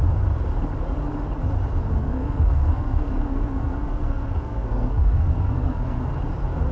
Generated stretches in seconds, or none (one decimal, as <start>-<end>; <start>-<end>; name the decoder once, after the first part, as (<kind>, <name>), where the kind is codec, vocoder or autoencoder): 2.0-6.0 (codec, SNAC)